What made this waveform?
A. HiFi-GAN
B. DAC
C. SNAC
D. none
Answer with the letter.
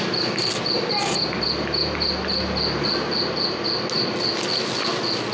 D